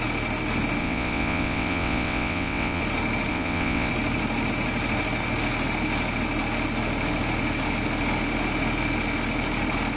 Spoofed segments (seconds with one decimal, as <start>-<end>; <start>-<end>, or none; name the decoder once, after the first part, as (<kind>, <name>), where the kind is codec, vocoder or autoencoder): 0.8-2.8 (vocoder, WaveNeXt); 3.3-3.9